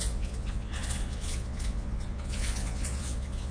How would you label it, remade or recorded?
remade